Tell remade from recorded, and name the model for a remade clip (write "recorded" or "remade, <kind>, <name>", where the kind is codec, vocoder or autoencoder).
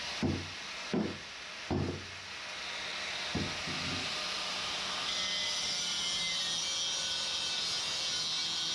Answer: recorded